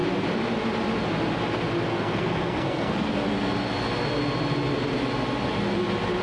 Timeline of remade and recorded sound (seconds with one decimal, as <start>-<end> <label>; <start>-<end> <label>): 0.0-1.9 recorded; 1.9-3.1 remade; 3.1-6.2 recorded